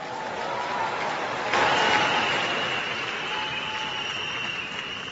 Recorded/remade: recorded